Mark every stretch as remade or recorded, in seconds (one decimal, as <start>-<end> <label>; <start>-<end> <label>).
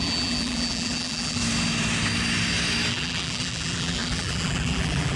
0.0-1.4 remade; 1.4-2.9 recorded; 2.9-5.2 remade